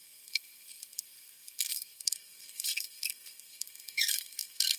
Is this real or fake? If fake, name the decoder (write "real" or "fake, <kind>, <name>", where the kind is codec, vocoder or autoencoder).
fake, codec, SNAC